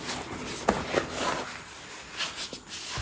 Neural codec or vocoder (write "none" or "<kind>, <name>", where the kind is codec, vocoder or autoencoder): none